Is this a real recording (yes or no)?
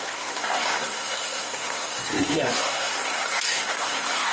no